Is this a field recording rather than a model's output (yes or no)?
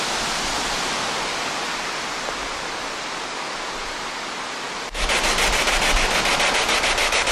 yes